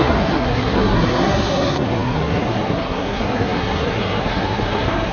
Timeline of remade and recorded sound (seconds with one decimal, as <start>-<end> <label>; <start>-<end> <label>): 0.0-5.1 remade

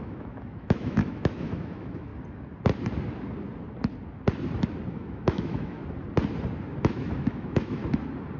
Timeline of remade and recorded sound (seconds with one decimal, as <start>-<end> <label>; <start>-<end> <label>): 0.0-2.1 remade; 2.1-4.9 recorded; 4.9-5.8 remade; 5.8-6.8 recorded; 6.8-7.8 remade; 7.8-8.4 recorded

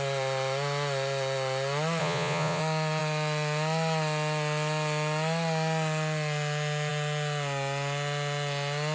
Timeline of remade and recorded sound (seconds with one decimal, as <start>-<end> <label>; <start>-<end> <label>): 0.0-2.0 recorded; 2.0-2.6 remade; 2.6-8.9 recorded

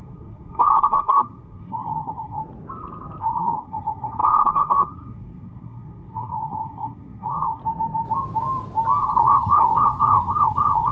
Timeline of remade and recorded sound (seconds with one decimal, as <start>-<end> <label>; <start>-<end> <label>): 0.0-2.4 remade; 2.4-3.2 recorded; 3.2-7.6 remade; 7.6-9.0 recorded; 9.0-10.9 remade

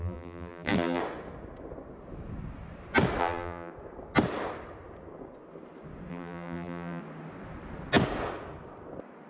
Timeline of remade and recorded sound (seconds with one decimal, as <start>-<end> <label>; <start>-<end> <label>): 0.0-1.0 remade; 1.0-3.2 recorded; 3.2-3.7 remade; 3.7-6.1 recorded; 6.1-7.0 remade; 7.0-9.3 recorded

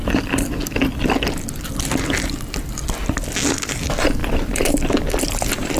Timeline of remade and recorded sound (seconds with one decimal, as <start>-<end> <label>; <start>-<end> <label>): 0.0-4.2 recorded; 4.2-4.9 remade; 4.9-5.8 recorded

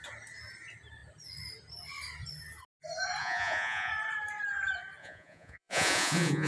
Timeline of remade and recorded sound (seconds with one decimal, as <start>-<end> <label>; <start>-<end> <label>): 0.0-3.2 recorded; 3.2-3.9 remade; 3.9-5.0 recorded; 5.0-6.5 remade